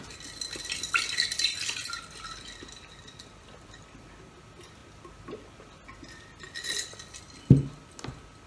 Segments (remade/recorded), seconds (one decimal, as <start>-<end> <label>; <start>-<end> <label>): 0.0-8.5 recorded